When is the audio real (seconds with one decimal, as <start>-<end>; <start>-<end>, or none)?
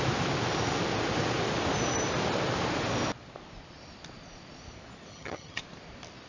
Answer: 0.0-5.1; 5.6-6.3